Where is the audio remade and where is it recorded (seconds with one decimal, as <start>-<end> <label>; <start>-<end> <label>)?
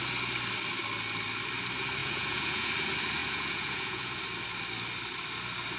0.0-2.0 recorded; 2.0-2.7 remade; 2.7-3.2 recorded; 3.2-4.2 remade; 4.2-5.8 recorded